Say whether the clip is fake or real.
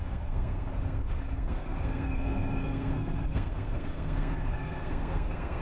fake